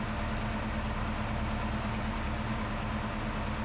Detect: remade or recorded recorded